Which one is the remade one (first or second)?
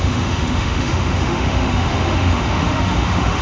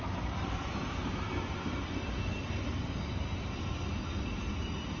first